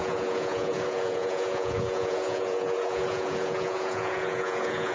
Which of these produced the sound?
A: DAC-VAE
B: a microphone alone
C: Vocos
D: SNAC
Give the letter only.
C